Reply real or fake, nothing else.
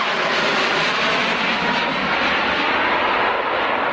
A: real